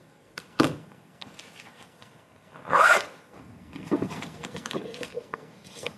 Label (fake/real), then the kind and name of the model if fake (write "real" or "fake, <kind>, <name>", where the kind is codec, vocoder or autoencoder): fake, codec, SNAC